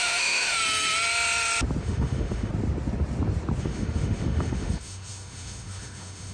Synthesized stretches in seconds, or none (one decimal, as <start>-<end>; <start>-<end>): 0.0-0.6; 1.8-2.5; 3.6-6.3